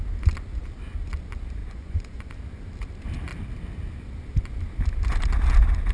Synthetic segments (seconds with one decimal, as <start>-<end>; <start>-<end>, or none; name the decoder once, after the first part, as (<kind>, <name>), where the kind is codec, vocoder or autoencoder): 1.6-2.3 (vocoder, Vocos)